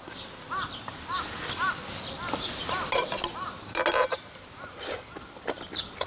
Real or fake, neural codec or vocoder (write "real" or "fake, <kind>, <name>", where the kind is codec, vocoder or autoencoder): real